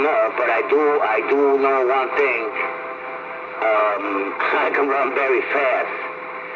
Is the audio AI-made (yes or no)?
no